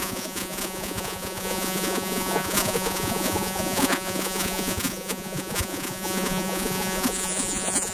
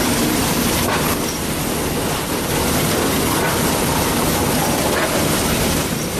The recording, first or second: second